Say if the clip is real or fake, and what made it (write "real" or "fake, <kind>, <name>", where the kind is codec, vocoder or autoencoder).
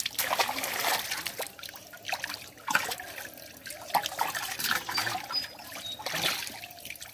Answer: real